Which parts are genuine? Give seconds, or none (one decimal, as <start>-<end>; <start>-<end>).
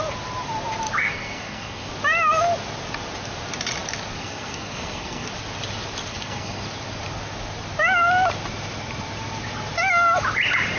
0.0-1.0; 1.9-4.2; 5.3-6.1; 6.6-10.8